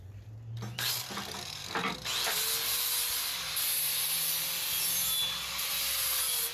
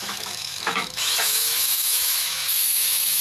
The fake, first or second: second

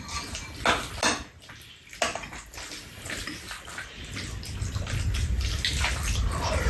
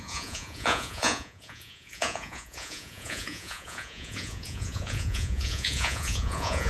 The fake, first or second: second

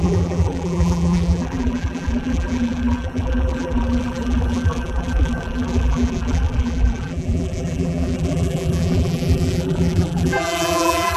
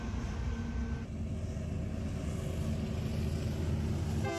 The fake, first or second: first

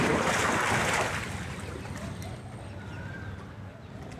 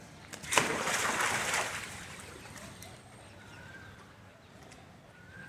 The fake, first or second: second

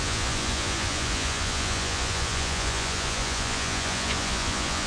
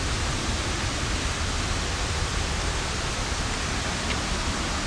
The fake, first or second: first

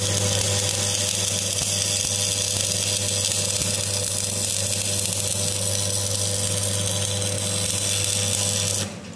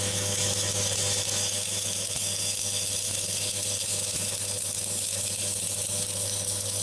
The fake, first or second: second